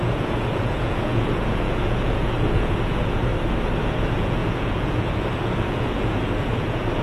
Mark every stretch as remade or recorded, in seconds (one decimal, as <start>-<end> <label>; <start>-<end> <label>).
0.0-3.3 remade; 3.3-3.8 recorded; 3.8-7.0 remade